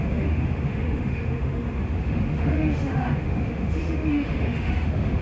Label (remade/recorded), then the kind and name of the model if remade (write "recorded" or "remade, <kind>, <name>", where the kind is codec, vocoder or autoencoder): remade, autoencoder, DAC-VAE